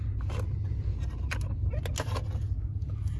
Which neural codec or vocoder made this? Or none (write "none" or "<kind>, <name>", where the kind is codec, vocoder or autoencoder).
none